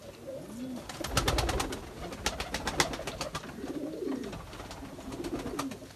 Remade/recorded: recorded